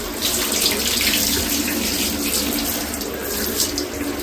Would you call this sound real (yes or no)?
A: yes